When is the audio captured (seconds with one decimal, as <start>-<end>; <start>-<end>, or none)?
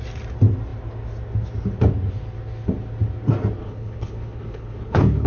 0.0-3.6